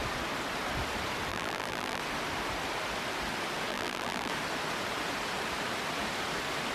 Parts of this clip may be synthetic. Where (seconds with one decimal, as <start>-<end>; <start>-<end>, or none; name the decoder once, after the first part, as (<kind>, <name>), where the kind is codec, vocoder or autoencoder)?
1.3-2.0 (vocoder, BigVGAN v2); 3.7-4.3

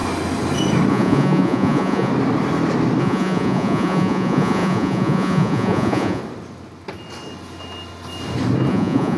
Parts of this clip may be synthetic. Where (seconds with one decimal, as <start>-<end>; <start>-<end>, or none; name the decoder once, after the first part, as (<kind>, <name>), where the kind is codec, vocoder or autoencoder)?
0.9-2.1 (vocoder, Vocos); 3.0-6.2; 8.7-9.2